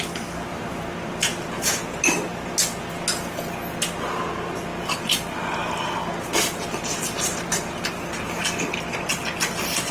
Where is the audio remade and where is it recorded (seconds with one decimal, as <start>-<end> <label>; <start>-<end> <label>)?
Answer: 0.0-0.5 recorded; 0.5-1.7 remade; 1.7-9.9 recorded

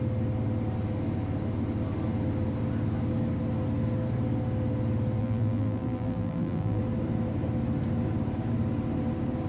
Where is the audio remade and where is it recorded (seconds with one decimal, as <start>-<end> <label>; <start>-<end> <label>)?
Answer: 0.0-5.2 recorded; 5.2-6.8 remade; 6.8-9.5 recorded

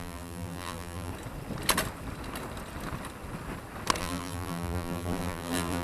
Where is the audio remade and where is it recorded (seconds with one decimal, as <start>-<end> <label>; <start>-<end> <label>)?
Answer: 0.0-1.1 remade; 1.1-4.0 recorded; 4.0-5.8 remade

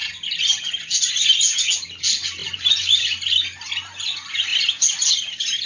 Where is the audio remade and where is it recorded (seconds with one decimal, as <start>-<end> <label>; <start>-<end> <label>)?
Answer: 0.0-2.4 recorded; 2.4-3.0 remade; 3.0-5.7 recorded

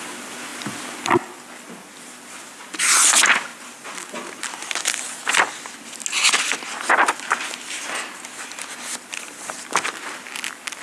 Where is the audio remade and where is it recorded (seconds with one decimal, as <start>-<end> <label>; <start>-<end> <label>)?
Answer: 0.0-3.5 recorded; 3.5-4.1 remade; 4.1-10.8 recorded

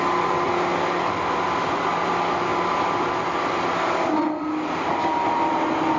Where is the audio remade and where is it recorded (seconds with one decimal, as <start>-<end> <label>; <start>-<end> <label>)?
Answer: 0.0-6.0 recorded

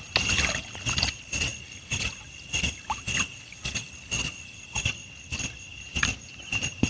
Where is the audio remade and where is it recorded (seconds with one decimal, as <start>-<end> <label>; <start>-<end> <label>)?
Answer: 0.0-5.7 recorded; 5.7-6.9 remade